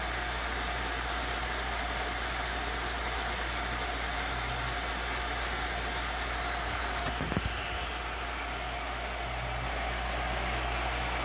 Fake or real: real